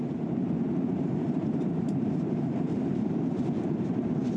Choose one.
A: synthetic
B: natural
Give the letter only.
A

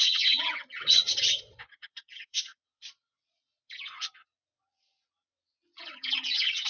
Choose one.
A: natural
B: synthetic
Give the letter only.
B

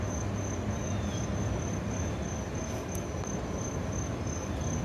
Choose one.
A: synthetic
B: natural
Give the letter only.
B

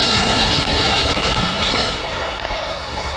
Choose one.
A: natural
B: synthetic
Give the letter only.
B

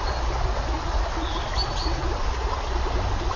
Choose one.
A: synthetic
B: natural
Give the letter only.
B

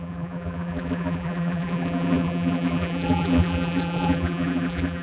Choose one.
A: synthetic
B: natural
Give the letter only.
A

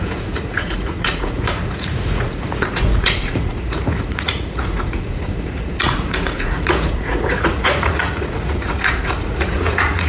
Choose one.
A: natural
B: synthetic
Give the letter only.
B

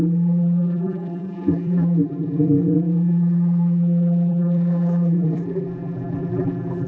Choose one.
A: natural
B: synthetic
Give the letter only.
B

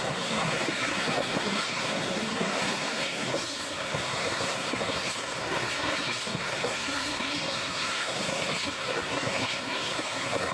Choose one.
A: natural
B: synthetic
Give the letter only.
B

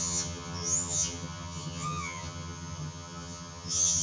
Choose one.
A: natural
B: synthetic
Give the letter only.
B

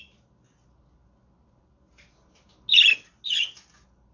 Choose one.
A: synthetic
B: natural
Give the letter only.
B